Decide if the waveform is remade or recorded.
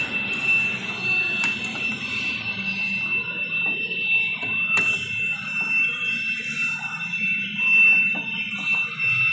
recorded